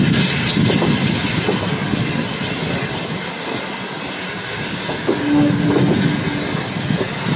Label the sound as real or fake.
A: real